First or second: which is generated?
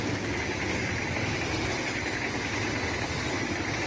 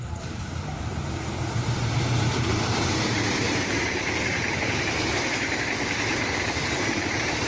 second